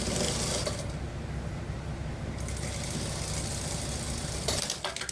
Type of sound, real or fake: real